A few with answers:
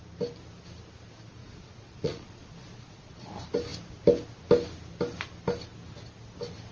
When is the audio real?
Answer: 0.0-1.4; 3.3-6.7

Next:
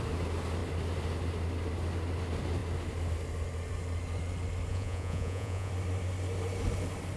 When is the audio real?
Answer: 0.0-4.7; 5.7-7.2

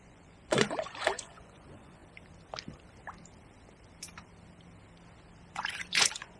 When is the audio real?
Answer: 2.0-5.5

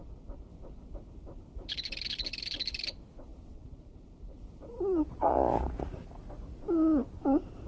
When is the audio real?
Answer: 0.0-4.7; 6.6-7.7

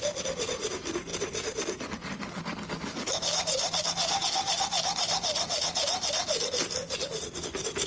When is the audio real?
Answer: 0.0-7.9

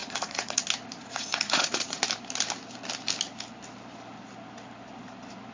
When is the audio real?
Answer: 0.6-1.0; 2.0-5.5